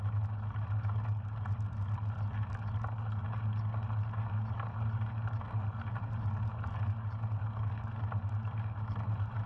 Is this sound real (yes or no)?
yes